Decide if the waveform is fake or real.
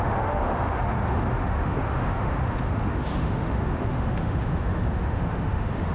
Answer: fake